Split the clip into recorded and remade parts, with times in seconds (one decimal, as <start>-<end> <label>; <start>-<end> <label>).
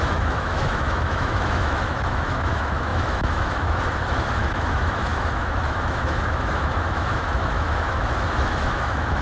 0.0-9.2 remade